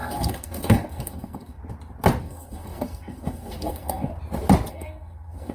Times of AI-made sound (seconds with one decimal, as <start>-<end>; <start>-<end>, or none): 0.0-1.6; 2.2-4.1; 4.7-5.5